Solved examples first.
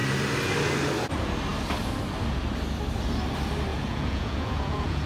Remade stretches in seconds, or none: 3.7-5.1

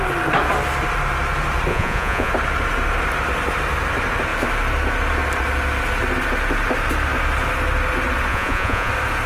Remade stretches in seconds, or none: 1.7-2.3; 8.3-8.9

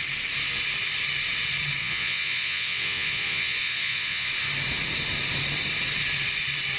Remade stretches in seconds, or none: 1.8-4.3

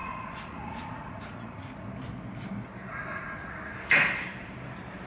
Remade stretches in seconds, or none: 0.0-1.7; 3.1-3.7

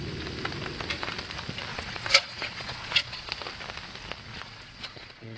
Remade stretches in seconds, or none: 1.7-3.3; 4.3-5.4